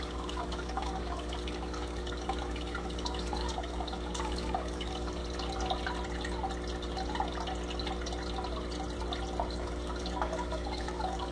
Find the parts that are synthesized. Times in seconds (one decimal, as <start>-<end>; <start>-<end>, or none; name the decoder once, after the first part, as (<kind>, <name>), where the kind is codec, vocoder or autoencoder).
0.0-5.2 (codec, DAC); 9.5-11.3